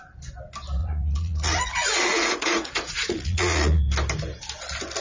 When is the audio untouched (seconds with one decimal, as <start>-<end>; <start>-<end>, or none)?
0.0-0.8; 3.8-5.0